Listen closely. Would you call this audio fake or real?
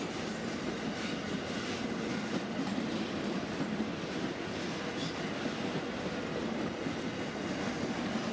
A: real